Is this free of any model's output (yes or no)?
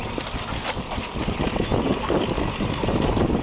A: yes